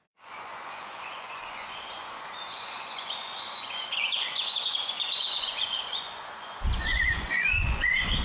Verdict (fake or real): fake